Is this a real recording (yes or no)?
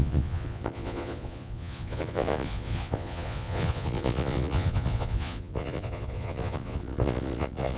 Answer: no